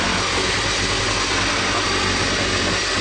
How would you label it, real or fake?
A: real